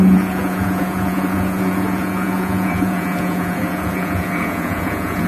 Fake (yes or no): yes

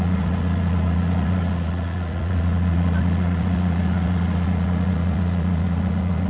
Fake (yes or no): yes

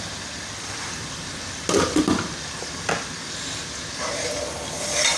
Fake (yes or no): no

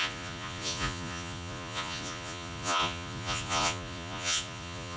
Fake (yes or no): yes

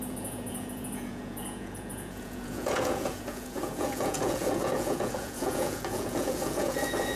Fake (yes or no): yes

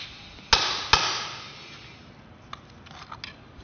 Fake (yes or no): no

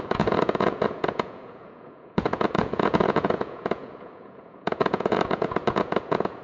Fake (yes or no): yes